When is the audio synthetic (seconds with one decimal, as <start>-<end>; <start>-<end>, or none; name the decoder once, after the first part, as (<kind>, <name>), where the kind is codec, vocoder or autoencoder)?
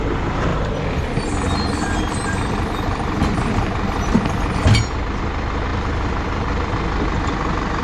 0.5-5.2 (vocoder, BigVGAN v2); 5.7-6.6